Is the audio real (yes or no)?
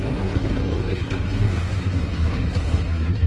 no